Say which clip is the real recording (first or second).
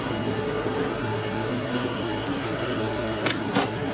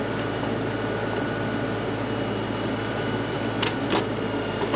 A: second